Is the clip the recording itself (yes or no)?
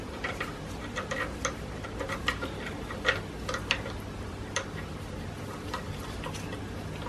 yes